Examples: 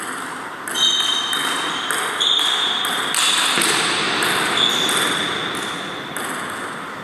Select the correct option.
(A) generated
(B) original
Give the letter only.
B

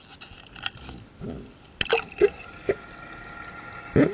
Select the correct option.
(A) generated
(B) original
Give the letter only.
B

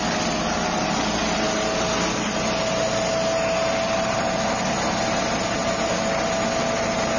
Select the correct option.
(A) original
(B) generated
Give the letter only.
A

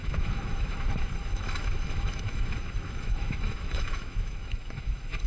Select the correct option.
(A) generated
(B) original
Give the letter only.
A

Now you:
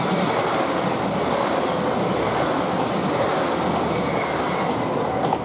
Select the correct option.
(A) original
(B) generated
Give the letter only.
A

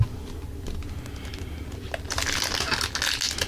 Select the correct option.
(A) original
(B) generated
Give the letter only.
A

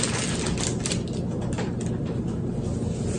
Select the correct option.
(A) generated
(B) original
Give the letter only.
B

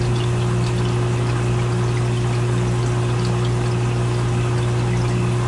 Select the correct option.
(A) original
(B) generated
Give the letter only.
A